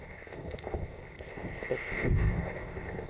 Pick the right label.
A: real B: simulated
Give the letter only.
B